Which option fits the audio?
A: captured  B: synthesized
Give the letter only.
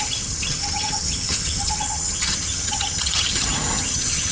B